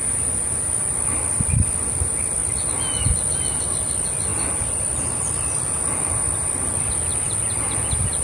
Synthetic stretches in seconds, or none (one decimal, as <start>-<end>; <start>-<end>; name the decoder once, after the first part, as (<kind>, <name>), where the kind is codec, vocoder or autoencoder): none